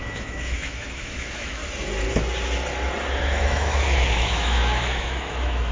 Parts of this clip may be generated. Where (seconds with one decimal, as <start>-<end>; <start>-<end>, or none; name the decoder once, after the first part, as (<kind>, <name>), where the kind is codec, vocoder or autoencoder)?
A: 0.0-1.6 (autoencoder, DAC-VAE); 3.2-5.7